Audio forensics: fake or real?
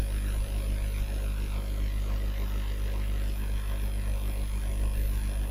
real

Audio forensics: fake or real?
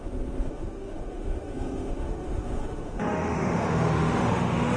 fake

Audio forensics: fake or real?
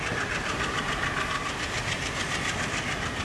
real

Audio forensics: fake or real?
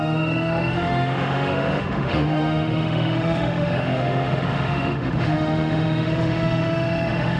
fake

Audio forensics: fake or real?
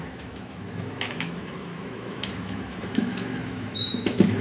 fake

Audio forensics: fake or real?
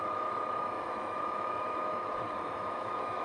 fake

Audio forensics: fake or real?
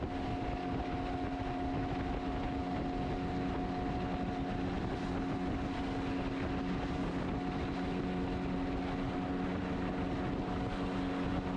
real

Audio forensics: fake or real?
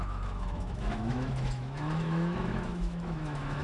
fake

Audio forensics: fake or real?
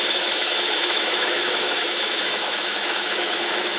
fake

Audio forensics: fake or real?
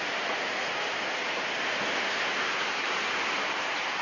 real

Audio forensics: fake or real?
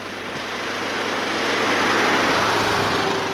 real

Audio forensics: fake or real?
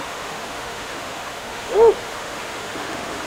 fake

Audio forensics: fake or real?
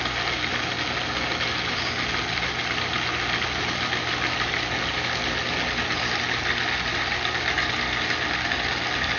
real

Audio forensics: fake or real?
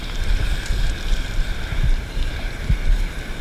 real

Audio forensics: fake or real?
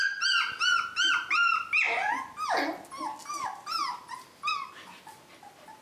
real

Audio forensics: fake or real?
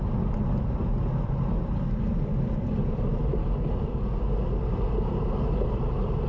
real